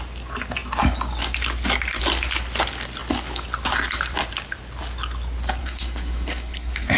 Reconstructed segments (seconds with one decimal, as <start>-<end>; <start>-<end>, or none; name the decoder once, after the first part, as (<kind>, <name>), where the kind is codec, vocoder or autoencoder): 5.6-7.0 (codec, SNAC)